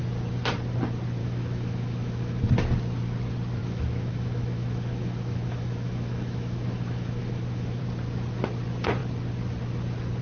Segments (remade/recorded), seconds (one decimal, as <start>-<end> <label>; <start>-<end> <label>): 0.0-1.2 recorded; 1.2-2.4 remade; 2.4-3.6 recorded; 3.6-7.8 remade; 7.8-10.2 recorded